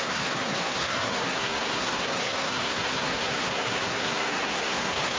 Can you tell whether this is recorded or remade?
remade